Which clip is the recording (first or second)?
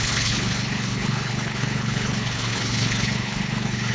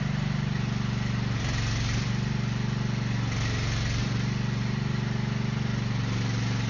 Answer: second